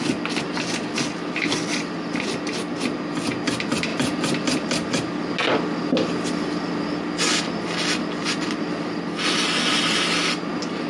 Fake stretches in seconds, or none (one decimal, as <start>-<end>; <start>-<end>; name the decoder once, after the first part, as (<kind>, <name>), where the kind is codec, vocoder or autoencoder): none